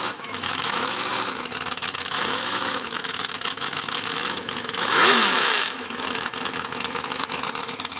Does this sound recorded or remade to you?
remade